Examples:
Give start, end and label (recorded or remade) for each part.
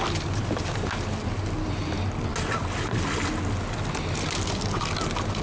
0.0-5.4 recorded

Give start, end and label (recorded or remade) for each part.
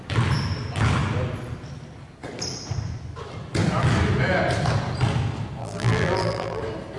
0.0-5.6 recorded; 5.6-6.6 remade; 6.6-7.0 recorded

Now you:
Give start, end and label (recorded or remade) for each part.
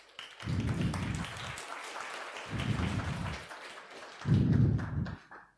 0.0-5.6 recorded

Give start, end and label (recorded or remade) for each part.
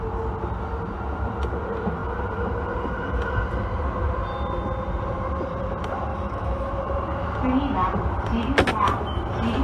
0.0-6.1 recorded; 6.1-6.7 remade; 6.7-9.6 recorded